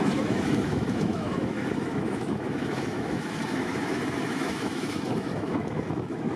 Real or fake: fake